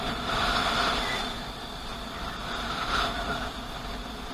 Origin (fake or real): real